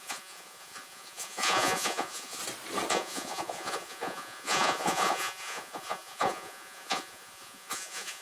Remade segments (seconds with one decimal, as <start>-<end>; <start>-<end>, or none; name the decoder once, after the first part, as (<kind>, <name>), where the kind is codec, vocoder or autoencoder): 0.0-2.4 (vocoder, Vocos); 2.9-8.2